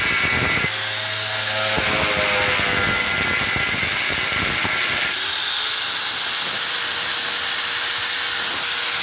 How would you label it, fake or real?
real